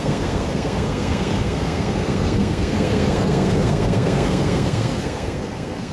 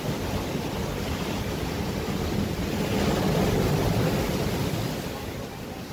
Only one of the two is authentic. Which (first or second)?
second